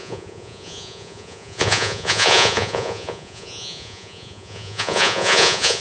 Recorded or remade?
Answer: remade